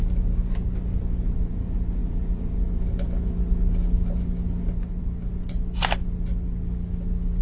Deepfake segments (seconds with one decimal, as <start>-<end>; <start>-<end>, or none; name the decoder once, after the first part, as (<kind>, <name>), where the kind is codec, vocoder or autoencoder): none